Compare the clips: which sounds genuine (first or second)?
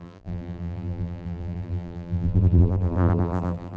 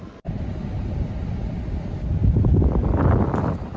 second